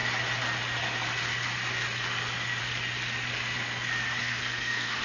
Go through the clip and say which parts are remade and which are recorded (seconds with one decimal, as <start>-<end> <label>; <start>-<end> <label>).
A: 0.0-4.2 recorded; 4.2-5.0 remade